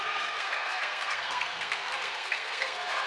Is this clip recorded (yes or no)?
no